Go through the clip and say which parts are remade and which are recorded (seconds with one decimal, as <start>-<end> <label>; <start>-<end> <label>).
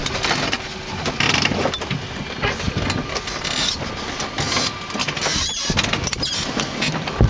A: 0.0-7.3 recorded